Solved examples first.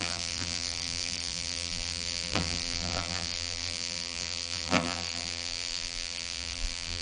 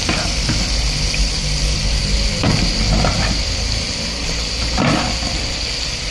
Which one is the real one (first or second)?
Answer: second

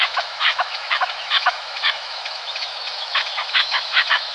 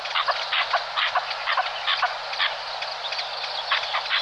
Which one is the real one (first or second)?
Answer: second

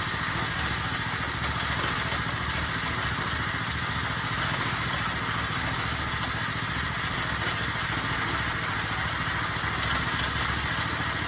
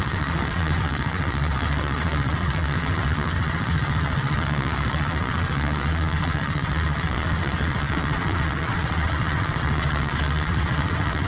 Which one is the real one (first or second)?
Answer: first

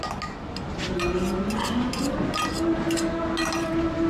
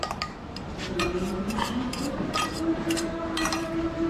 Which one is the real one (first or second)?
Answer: first